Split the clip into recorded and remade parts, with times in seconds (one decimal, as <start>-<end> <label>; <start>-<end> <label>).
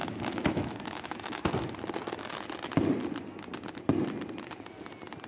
0.0-1.5 remade; 1.5-5.3 recorded